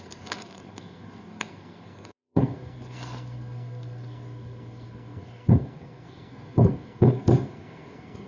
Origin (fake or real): fake